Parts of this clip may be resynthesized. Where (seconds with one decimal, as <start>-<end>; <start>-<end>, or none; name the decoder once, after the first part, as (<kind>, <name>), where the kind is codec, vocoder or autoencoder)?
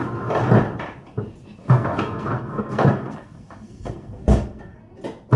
1.6-4.8 (codec, SNAC)